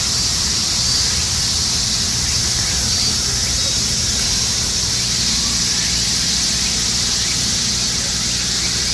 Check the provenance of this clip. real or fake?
real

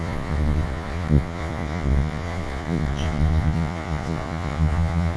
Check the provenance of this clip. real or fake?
fake